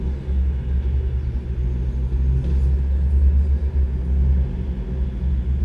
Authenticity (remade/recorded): recorded